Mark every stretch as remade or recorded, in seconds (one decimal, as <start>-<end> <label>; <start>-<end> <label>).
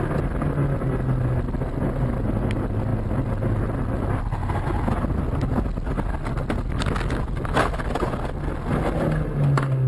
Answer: 0.0-9.9 recorded